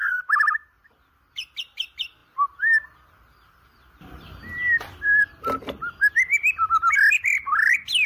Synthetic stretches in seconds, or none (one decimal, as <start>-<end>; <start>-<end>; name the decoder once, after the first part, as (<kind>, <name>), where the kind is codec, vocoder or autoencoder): none